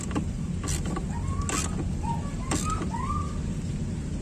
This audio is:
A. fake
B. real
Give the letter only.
B